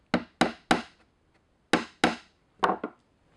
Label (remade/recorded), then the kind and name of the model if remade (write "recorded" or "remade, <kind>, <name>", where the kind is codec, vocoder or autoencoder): recorded